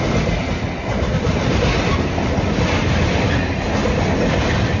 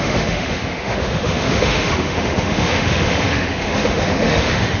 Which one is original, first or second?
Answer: first